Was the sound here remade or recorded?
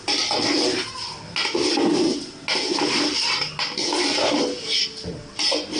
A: recorded